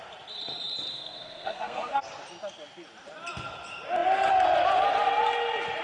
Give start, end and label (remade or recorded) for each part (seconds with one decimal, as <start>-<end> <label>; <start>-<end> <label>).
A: 0.0-0.9 recorded; 0.9-2.0 remade; 2.0-5.8 recorded